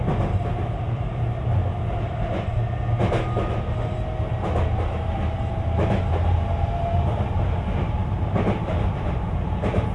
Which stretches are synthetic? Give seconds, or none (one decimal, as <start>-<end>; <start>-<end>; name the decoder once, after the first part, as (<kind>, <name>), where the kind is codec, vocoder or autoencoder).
0.0-1.6 (vocoder, BigVGAN v2); 5.5-9.9